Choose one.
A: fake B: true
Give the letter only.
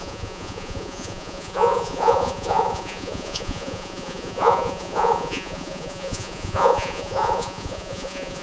A